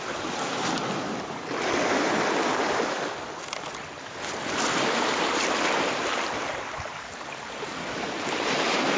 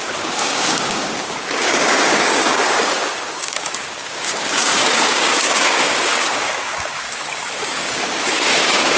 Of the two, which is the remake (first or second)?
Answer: second